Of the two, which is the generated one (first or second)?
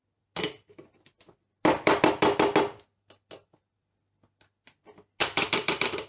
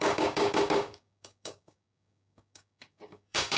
second